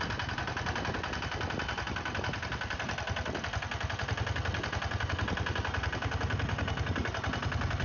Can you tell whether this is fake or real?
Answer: real